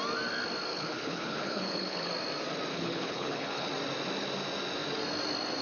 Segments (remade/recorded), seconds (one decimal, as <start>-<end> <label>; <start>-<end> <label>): 0.0-0.7 recorded; 0.7-2.1 remade; 2.1-2.7 recorded; 2.7-3.7 remade; 3.7-5.6 recorded